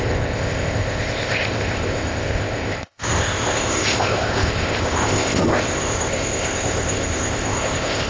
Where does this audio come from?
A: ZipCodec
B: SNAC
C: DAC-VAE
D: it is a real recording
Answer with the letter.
A